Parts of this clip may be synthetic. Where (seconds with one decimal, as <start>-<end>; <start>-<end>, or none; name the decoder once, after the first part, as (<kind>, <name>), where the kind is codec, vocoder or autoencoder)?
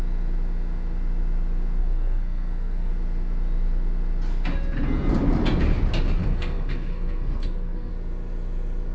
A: 1.8-2.9 (codec, SNAC); 6.2-7.9